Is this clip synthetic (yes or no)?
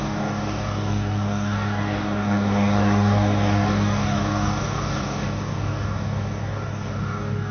yes